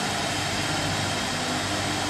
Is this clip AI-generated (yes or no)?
no